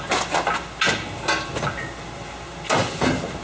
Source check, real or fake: real